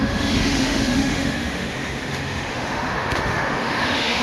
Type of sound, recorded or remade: remade